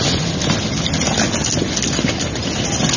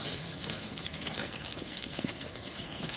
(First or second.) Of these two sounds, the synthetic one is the second